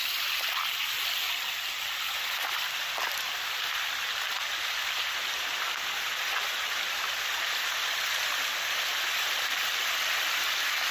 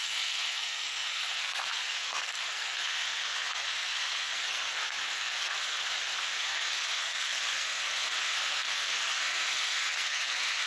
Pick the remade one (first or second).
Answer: second